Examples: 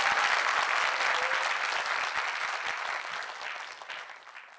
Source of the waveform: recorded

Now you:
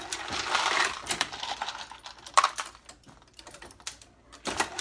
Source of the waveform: recorded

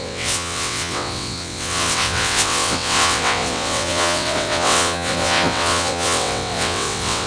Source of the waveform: remade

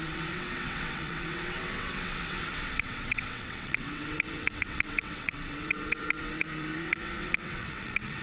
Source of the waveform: remade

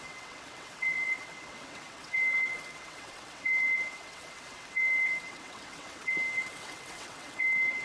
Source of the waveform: remade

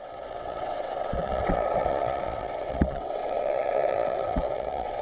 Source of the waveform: remade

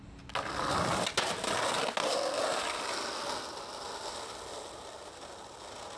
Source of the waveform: recorded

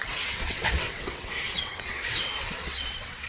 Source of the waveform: remade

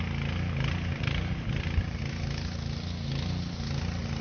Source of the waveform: recorded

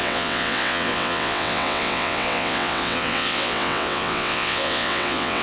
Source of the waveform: remade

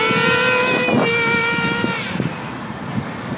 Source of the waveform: recorded